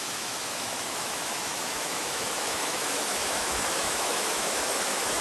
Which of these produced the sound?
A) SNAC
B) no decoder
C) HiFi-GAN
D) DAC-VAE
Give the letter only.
D